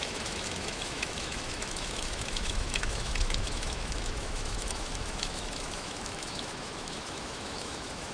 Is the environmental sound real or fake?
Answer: fake